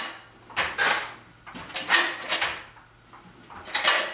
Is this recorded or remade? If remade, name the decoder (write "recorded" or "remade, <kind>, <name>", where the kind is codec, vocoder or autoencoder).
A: remade, vocoder, BigVGAN v2